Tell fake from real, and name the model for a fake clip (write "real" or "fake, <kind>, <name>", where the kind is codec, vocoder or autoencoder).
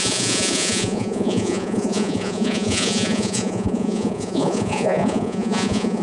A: fake, vocoder, Vocos